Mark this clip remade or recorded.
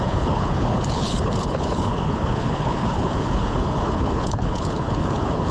remade